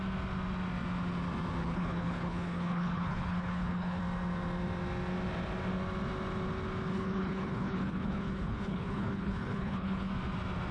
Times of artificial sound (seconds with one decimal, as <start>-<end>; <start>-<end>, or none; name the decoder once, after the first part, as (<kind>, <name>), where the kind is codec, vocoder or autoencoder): 1.6-4.0 (codec, HILCodec); 6.9-10.1